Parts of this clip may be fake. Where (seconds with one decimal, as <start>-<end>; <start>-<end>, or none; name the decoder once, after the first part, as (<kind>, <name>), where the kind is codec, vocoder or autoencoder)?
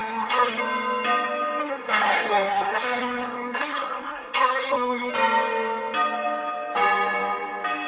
0.0-0.6 (codec, SNAC); 1.6-5.1